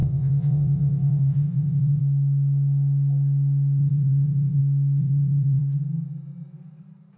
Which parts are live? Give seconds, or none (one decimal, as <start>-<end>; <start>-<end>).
2.0-3.8; 4.6-5.0; 5.6-7.2